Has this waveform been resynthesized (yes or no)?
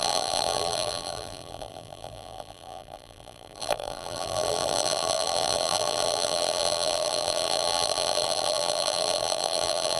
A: yes